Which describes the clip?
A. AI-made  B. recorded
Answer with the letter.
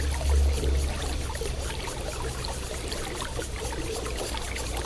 B